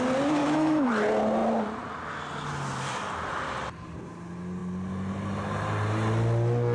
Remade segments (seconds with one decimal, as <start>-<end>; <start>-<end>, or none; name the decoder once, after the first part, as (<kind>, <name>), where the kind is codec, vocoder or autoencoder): 0.4-0.9 (autoencoder, DAC-VAE)